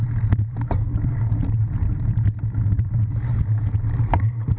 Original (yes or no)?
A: no